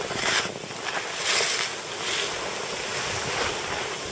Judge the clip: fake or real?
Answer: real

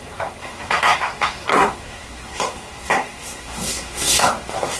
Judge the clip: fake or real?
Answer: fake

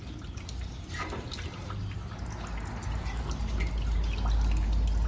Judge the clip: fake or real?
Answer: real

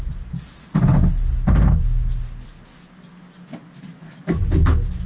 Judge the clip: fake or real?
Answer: real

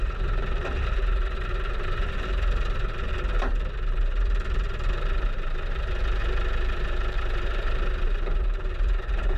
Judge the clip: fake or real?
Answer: fake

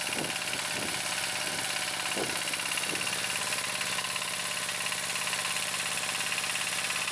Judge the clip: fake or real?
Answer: real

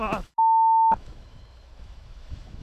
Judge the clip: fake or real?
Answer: fake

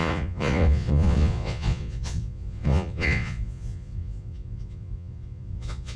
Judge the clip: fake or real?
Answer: fake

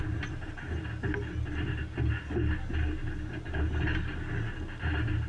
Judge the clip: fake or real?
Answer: real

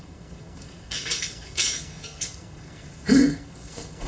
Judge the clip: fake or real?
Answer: fake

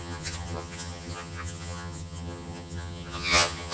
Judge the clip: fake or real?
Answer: fake